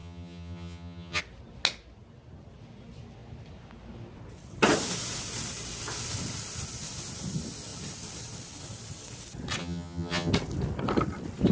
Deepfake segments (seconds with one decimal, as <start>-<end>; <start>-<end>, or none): 0.0-1.2; 9.6-10.3